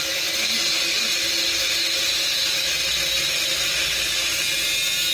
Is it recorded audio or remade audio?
recorded